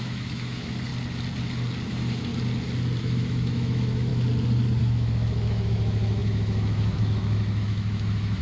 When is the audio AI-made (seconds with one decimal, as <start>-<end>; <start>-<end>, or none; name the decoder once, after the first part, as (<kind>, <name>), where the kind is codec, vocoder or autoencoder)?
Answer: 0.0-0.9 (autoencoder, DAC-VAE); 1.9-2.3; 3.0-4.1; 4.8-8.4